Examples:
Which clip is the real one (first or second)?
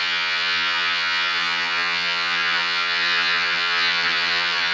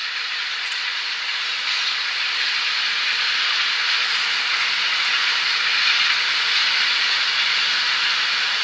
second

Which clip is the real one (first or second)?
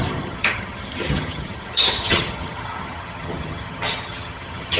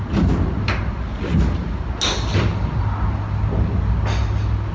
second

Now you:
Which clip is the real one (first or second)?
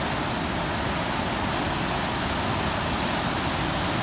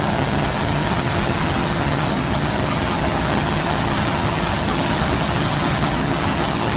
first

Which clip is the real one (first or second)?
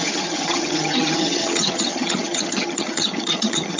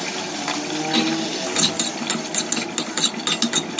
second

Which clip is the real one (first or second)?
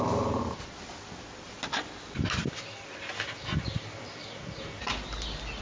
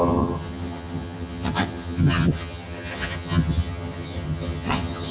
first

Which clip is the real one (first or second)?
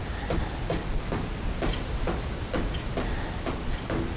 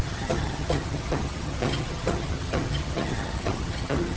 first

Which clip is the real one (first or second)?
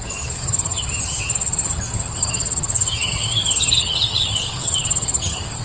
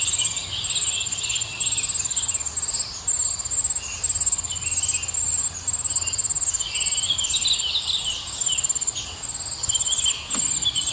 second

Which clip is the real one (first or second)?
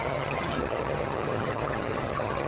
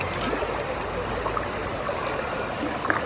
second